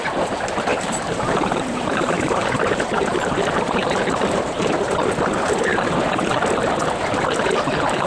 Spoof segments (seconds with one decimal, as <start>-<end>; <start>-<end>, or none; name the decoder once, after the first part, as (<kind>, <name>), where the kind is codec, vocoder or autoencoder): 0.7-4.6 (vocoder, BigVGAN v2)